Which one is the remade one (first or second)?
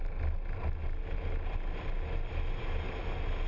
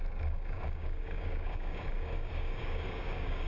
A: second